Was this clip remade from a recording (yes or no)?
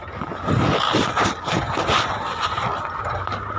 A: no